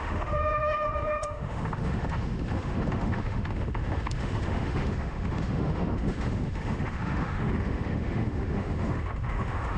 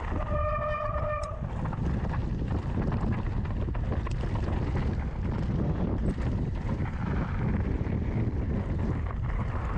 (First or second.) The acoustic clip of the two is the second